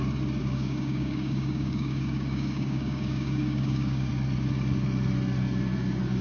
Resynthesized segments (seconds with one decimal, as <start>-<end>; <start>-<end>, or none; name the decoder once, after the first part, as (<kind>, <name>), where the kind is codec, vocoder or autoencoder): 0.4-4.1 (codec, DAC)